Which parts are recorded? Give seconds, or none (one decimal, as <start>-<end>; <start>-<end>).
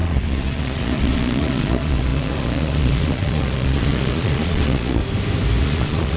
5.0-5.6